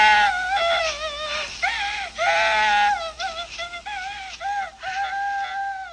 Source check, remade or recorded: recorded